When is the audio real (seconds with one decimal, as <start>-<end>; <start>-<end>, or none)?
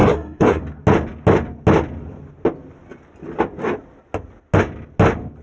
0.6-5.4